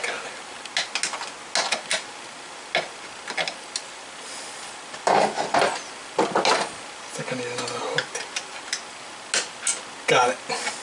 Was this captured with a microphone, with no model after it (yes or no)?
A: yes